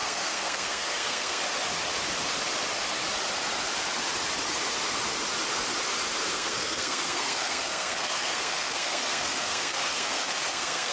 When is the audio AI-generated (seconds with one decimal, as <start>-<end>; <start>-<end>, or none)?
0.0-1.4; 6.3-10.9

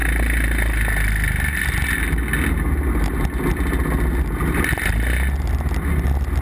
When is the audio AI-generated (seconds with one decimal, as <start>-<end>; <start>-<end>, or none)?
none

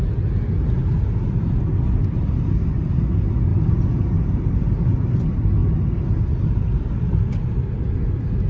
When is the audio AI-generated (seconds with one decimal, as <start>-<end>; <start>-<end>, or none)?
none